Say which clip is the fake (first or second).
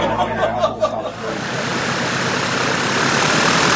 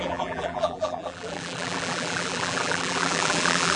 second